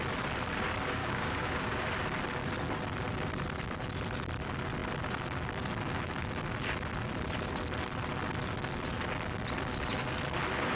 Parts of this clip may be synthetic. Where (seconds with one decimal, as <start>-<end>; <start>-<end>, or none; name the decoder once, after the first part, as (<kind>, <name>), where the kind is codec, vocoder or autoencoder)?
1.0-1.9 (codec, DAC)